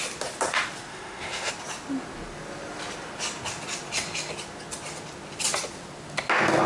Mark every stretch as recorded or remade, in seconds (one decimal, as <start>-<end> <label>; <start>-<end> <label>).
0.0-0.9 recorded; 0.9-1.5 remade; 1.5-6.7 recorded